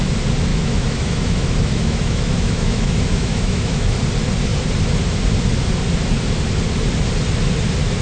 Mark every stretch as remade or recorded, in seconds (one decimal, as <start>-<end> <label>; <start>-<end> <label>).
0.0-0.5 recorded; 0.5-4.0 remade; 4.0-8.0 recorded